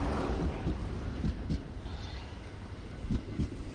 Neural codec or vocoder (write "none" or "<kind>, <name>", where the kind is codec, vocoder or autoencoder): none